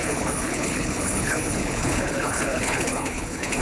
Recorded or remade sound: remade